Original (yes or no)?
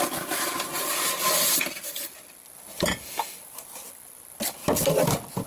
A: yes